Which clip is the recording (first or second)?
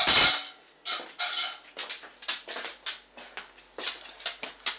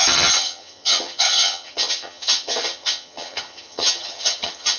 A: first